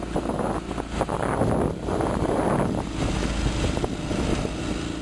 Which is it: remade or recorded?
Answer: recorded